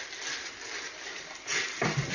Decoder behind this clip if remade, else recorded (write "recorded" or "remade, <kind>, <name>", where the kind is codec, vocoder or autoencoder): recorded